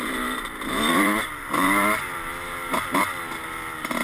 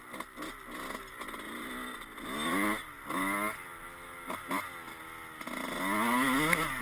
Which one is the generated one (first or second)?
first